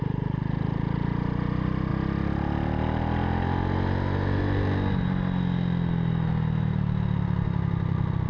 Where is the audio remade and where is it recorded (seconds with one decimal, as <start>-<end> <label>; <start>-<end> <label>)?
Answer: 0.0-8.3 recorded